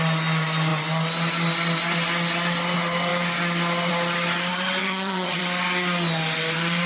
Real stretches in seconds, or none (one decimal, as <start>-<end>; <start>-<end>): 0.0-4.8; 5.4-6.9